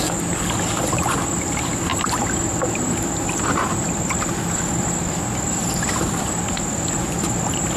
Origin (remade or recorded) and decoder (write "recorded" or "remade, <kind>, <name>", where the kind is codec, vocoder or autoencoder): recorded